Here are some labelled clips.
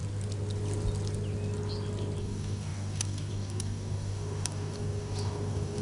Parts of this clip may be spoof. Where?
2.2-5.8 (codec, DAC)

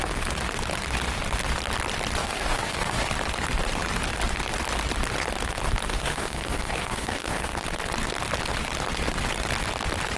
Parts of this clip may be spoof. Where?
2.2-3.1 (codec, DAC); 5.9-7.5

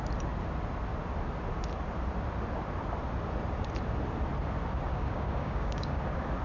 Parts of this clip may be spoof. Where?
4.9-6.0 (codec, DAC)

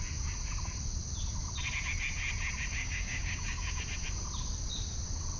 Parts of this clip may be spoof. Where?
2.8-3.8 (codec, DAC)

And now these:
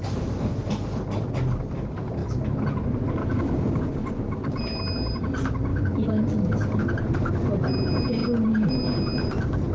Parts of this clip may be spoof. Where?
3.2-4.6 (codec, DAC); 5.7-6.8

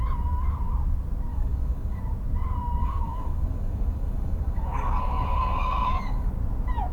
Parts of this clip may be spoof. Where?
1.3-2.0 (codec, DAC); 2.8-6.3

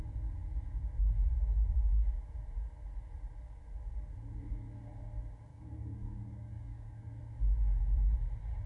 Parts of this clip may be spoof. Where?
5.5-7.2 (codec, DAC)

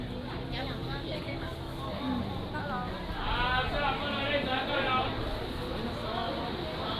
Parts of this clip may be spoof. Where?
0.8-2.0 (codec, DAC)